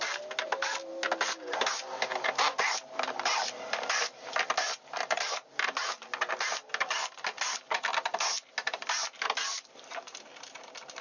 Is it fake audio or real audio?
real